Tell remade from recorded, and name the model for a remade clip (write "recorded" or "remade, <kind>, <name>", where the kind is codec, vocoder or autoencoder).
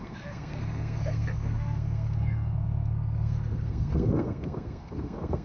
remade, codec, SNAC